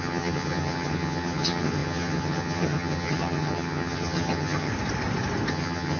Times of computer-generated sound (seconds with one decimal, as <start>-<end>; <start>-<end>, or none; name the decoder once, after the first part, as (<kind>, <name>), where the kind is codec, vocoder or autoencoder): 0.0-4.7 (vocoder, HiFi-GAN); 5.5-6.0